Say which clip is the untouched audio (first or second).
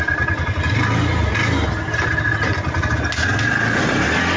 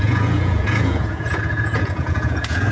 first